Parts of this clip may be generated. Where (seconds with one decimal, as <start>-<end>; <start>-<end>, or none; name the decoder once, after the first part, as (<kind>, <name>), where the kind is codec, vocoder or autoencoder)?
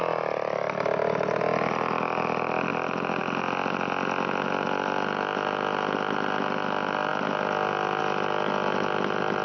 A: none